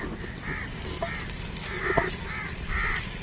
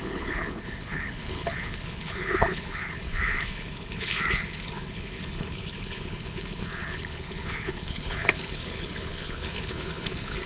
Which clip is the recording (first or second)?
first